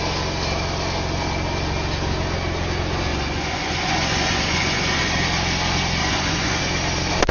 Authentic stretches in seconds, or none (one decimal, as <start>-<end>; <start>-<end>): 0.0-3.1; 5.1-6.0; 6.6-7.3